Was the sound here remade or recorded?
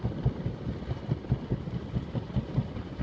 recorded